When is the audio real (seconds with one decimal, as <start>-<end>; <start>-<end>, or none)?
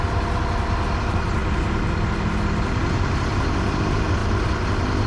0.0-5.1